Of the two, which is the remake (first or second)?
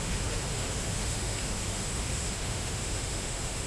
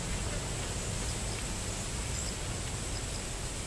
first